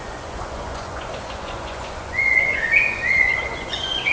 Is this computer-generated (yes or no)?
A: yes